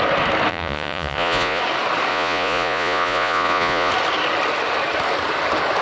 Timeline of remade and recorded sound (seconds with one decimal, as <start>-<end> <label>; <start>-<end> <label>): 0.0-0.5 recorded; 0.5-1.6 remade; 1.6-2.1 recorded; 2.1-3.9 remade; 3.9-5.8 recorded